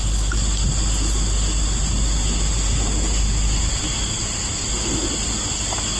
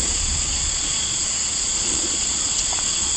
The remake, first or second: second